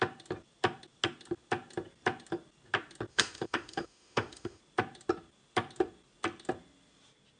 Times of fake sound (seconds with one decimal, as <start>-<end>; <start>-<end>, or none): 3.1-4.6